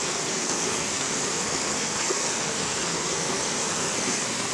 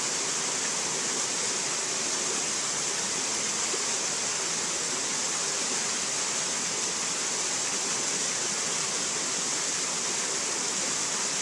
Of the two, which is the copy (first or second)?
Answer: first